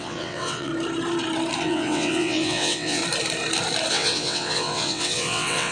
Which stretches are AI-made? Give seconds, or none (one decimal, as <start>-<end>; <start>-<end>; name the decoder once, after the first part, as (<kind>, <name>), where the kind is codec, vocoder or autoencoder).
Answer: 0.0-0.7 (vocoder, WaveNeXt); 1.6-3.0; 3.9-5.7